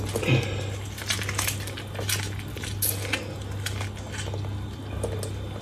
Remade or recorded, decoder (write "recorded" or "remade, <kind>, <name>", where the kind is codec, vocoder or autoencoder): recorded